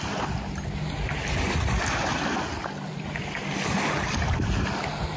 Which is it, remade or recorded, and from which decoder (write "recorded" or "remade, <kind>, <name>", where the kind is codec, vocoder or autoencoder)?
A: recorded